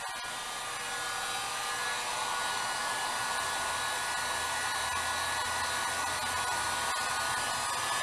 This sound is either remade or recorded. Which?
recorded